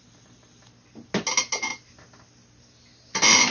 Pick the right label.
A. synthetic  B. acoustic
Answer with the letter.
B